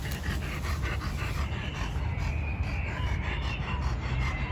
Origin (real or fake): real